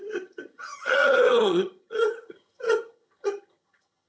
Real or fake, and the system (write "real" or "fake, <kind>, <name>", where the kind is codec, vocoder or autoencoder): fake, vocoder, HiFi-GAN